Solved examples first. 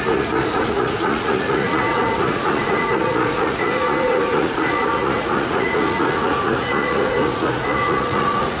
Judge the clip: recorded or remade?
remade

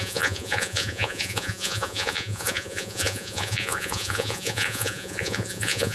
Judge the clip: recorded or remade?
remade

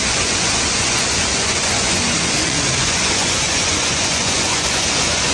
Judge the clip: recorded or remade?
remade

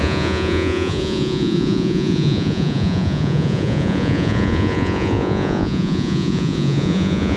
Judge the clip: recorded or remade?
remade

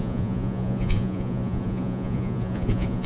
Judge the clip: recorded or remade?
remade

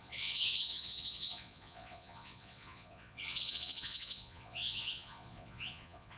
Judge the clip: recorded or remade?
remade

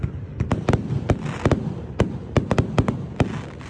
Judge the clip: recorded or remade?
recorded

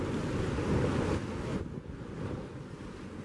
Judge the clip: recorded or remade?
recorded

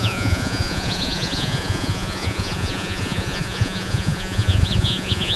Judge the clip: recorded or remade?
remade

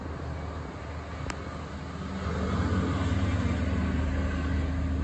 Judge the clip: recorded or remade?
recorded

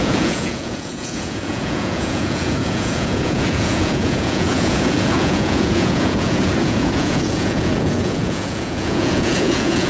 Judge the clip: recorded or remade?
remade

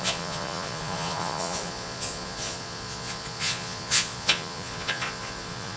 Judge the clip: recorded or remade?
remade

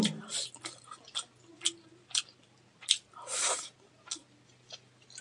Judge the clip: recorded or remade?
recorded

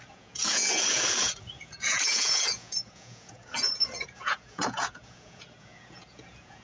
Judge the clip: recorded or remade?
remade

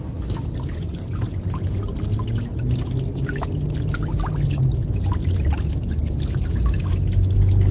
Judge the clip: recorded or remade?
recorded